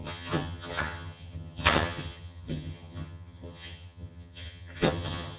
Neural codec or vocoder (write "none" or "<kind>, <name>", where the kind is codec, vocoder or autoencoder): vocoder, HiFi-GAN